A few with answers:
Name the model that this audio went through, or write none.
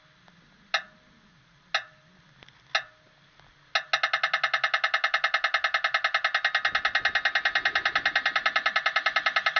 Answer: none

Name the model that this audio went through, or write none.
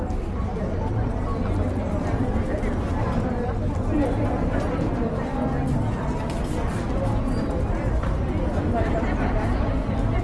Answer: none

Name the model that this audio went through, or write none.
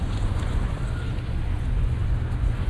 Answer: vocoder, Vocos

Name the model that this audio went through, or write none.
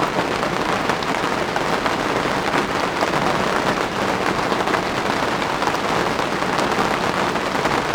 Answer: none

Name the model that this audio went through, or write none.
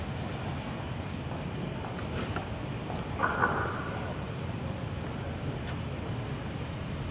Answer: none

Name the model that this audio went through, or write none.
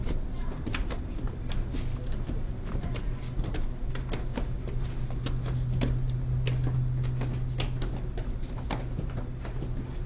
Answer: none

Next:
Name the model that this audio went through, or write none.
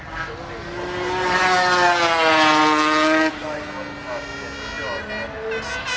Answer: none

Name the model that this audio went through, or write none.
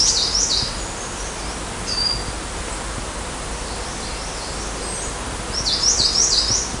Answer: none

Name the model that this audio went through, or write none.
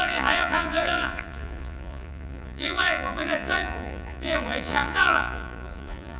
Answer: vocoder, Vocos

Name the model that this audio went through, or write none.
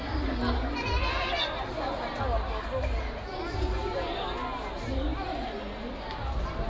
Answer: none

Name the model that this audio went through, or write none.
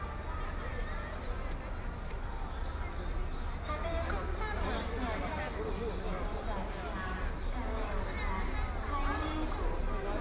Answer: none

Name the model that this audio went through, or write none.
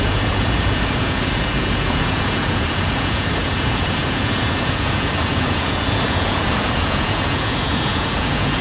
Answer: vocoder, Vocos